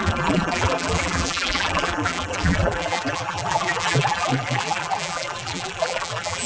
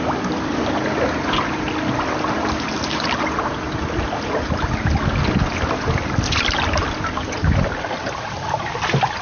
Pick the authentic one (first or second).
second